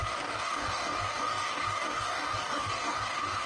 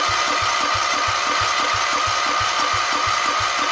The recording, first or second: second